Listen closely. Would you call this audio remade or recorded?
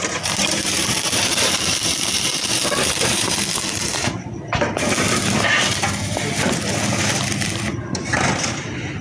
remade